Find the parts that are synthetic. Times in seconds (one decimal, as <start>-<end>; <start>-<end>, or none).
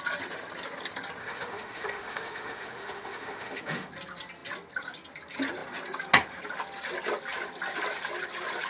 1.2-3.9